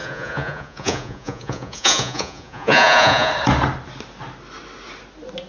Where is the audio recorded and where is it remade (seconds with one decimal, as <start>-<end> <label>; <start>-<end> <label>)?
0.0-3.3 remade; 3.3-5.5 recorded